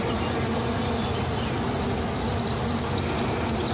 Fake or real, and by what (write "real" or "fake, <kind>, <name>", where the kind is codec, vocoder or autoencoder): real